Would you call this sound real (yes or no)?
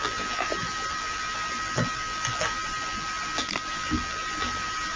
no